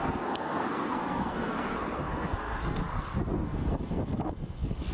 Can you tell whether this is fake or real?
fake